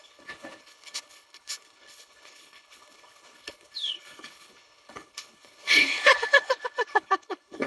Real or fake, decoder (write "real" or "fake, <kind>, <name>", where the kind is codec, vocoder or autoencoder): fake, codec, HILCodec